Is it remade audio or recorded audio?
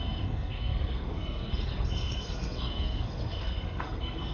remade